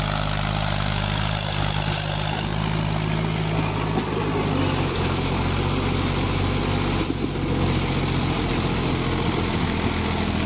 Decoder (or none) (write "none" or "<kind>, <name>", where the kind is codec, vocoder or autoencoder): none